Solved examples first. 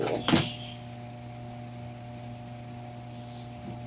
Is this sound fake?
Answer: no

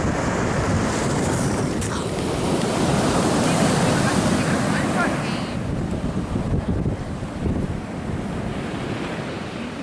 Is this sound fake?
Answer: yes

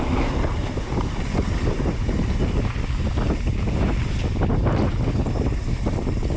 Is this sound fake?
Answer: no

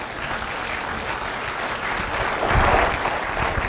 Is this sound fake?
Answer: no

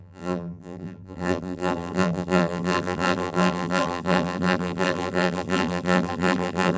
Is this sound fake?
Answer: yes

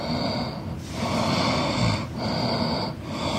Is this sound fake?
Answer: no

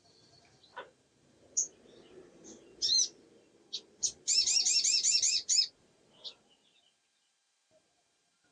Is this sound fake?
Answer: yes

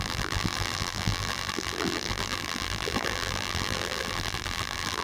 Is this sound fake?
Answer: yes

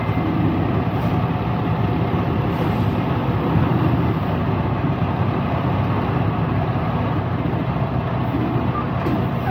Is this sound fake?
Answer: no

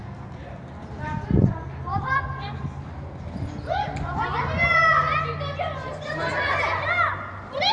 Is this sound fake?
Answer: no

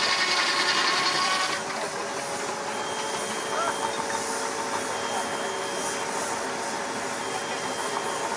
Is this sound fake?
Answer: no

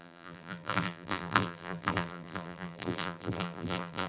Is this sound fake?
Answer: yes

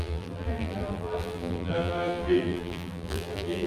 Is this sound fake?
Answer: yes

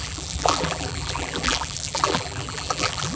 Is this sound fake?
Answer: yes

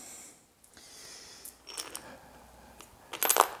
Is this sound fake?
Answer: no